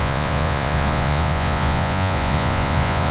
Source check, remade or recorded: remade